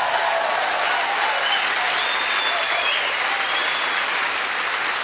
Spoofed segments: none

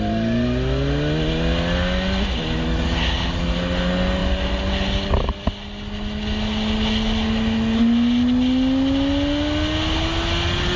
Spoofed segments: none

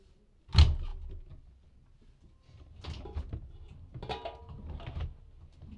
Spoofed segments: none

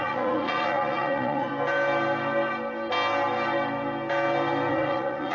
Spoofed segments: 0.0-1.5; 4.7-5.3

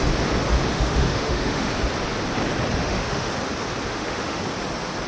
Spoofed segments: 0.7-1.7; 2.8-3.3; 3.9-4.4

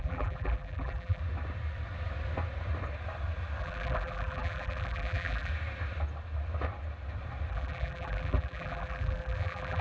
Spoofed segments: 0.0-1.2; 3.6-5.5; 7.5-9.8

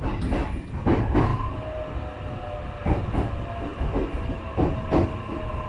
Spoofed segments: none